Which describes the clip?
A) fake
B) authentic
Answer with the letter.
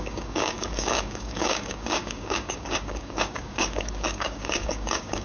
A